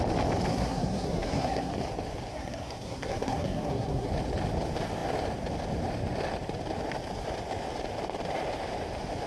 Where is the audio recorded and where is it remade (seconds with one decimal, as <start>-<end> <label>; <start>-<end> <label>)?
0.0-0.5 recorded; 0.5-1.7 remade; 1.7-2.3 recorded; 2.3-4.1 remade; 4.1-9.3 recorded